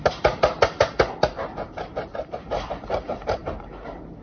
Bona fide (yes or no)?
no